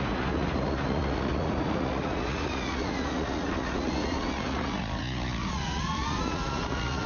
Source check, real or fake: fake